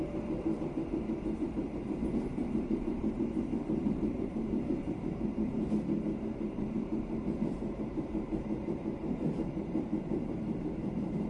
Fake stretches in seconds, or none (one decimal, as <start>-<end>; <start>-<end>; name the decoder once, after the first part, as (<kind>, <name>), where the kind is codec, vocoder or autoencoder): 0.0-11.3 (vocoder, BigVGAN v2)